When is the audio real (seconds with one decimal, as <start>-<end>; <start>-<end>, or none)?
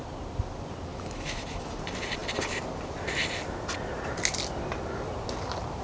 0.0-0.9; 1.8-5.8